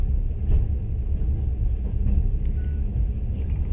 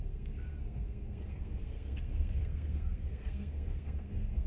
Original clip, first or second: first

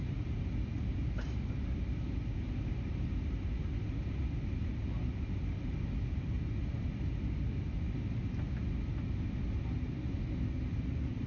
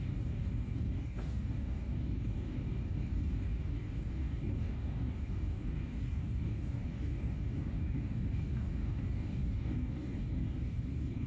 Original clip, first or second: first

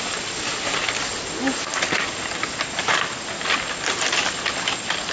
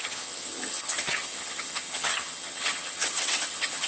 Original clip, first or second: first